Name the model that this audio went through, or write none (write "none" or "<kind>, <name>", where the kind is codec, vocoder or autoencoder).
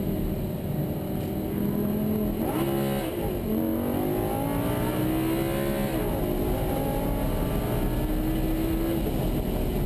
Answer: none